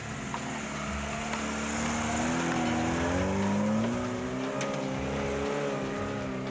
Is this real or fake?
real